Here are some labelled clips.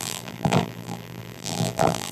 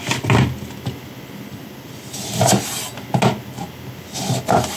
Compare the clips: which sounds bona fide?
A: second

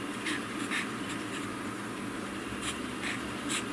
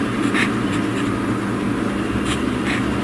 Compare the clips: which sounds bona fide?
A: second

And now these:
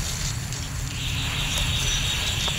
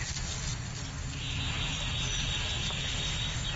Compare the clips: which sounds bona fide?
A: second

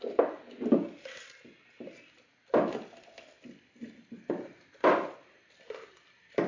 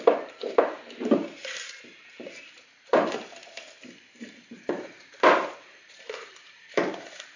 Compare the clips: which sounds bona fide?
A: first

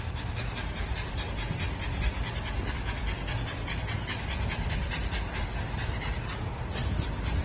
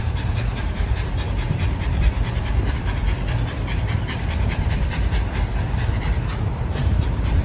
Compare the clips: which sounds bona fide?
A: first